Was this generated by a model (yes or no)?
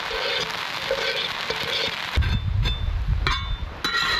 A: no